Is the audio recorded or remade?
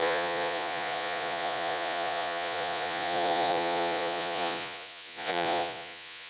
remade